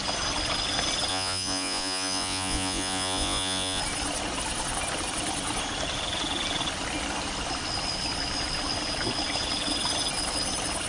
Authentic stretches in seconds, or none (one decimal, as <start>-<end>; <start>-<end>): 0.0-1.1; 3.8-10.9